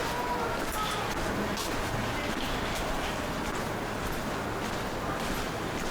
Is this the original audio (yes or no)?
yes